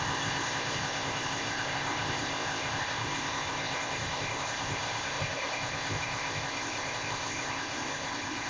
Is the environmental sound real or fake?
fake